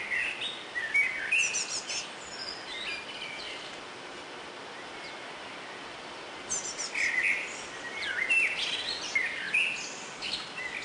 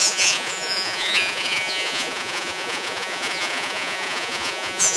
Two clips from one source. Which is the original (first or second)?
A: first